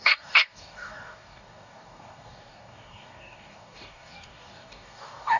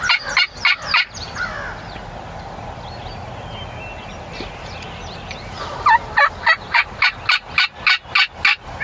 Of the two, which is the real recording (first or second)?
second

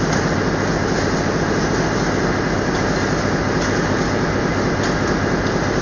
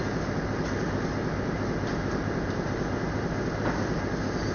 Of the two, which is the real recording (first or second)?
first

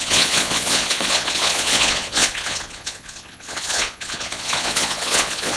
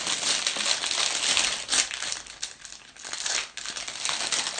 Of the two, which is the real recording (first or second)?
second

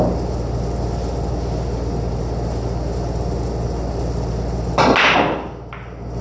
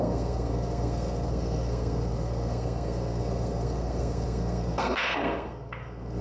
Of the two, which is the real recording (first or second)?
first